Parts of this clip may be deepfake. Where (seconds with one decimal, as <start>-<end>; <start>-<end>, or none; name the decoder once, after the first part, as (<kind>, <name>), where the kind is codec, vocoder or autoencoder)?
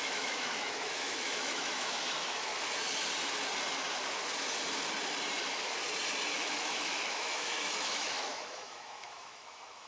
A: 0.0-2.5 (autoencoder, DAC-VAE); 6.3-9.9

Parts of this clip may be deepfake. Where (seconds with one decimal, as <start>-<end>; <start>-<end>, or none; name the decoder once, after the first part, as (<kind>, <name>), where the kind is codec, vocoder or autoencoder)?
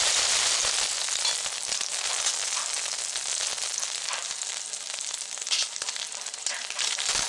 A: none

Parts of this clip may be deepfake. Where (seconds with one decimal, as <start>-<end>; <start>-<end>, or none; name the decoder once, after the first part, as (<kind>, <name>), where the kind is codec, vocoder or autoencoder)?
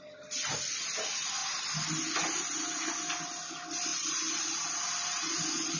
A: 3.9-5.3 (vocoder, BigVGAN v2)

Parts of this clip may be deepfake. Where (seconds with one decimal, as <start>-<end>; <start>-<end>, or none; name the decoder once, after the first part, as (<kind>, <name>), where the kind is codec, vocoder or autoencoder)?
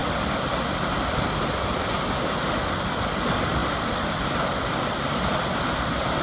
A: none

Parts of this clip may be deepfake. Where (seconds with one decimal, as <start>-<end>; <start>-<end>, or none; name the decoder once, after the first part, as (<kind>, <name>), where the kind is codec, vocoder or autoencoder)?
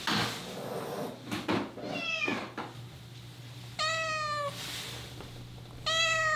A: none